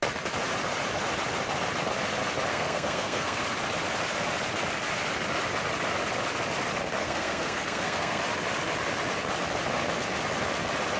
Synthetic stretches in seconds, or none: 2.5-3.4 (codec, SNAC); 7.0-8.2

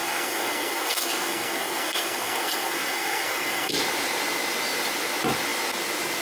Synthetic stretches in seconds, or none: 0.0-3.7 (codec, SNAC)

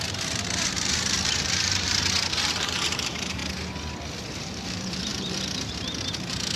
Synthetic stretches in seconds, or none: 0.0-3.4 (vocoder, BigVGAN v2); 4.3-6.6